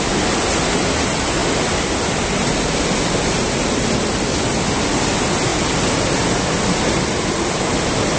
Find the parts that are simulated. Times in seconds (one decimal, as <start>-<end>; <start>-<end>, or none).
none